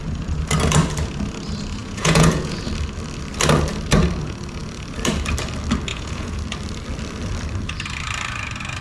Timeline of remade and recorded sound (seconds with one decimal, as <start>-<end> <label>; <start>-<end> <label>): 0.0-1.8 recorded; 1.8-2.7 remade; 2.7-5.9 recorded; 5.9-6.4 remade; 6.4-8.8 recorded